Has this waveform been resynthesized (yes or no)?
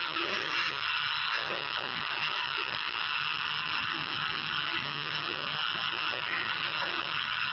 yes